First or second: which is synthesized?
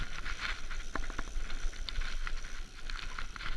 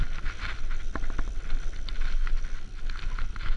first